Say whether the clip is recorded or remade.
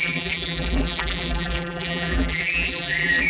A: remade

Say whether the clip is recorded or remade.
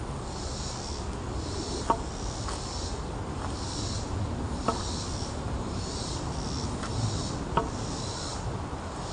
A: recorded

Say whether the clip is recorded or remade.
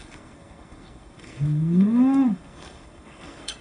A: remade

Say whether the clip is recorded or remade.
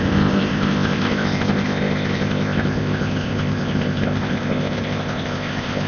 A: remade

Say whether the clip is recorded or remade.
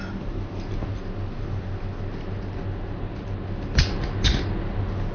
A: recorded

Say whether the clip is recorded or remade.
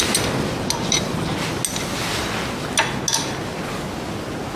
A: recorded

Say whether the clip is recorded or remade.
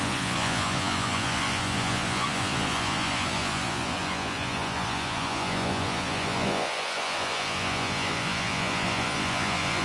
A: remade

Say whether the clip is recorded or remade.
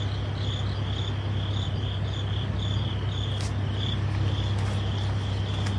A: recorded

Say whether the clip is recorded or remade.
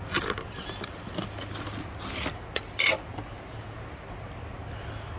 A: recorded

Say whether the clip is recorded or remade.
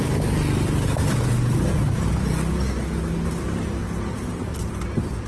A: recorded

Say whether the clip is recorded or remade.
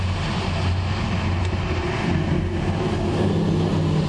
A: recorded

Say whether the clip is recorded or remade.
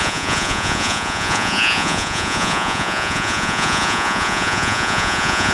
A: remade